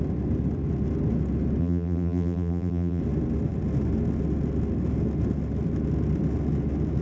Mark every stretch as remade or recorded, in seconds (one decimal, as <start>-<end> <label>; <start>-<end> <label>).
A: 0.0-1.6 recorded; 1.6-3.0 remade; 3.0-7.0 recorded